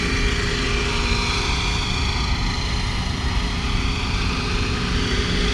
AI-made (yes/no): no